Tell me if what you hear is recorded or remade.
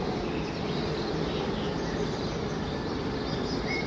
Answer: recorded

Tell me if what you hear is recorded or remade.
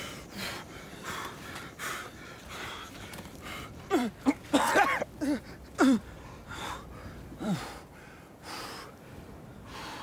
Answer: remade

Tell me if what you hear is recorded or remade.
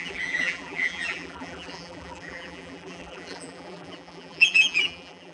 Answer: remade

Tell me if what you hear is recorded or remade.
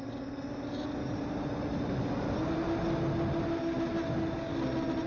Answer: recorded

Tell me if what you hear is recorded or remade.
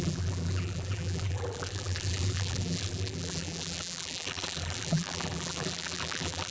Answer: remade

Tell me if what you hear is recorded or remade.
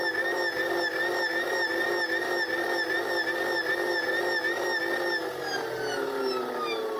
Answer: recorded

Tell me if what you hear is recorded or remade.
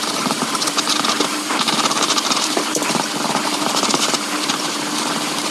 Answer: remade